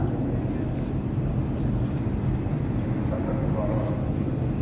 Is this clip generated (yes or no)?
no